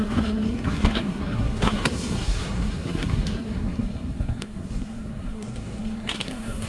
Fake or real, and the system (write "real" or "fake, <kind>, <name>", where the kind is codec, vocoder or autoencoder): fake, codec, SNAC